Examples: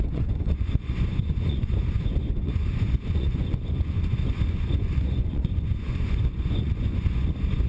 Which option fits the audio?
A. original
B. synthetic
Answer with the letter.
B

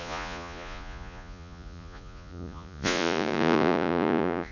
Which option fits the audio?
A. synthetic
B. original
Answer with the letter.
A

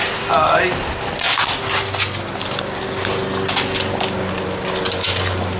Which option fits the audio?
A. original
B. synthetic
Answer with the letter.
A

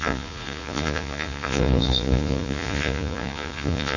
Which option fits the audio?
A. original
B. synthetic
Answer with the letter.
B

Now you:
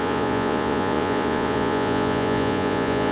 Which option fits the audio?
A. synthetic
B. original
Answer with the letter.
A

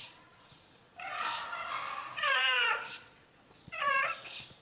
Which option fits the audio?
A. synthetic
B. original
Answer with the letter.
A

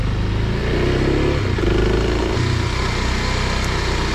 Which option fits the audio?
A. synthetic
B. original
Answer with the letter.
B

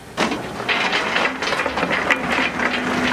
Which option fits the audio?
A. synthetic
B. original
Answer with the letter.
B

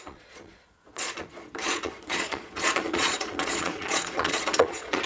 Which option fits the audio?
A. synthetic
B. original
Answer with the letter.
A